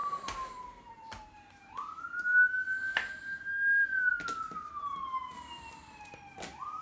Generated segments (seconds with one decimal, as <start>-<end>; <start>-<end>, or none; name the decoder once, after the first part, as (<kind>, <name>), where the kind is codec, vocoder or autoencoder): 0.0-2.0 (vocoder, BigVGAN v2)